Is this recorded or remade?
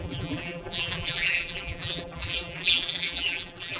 remade